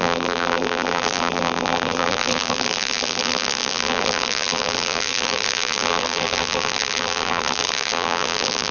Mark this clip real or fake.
fake